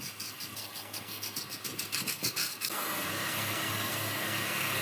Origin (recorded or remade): remade